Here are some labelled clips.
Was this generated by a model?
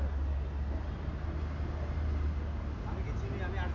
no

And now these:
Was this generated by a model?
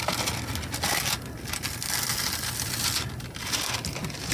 no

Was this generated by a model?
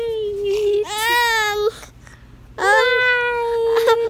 no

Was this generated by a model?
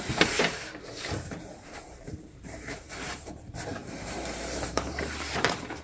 yes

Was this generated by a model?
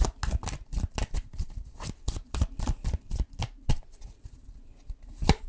no